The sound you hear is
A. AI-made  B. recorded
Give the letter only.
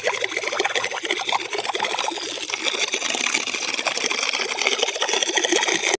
B